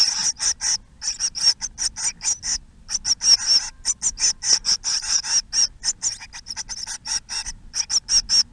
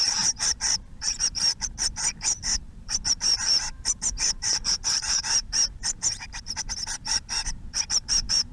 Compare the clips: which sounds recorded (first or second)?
first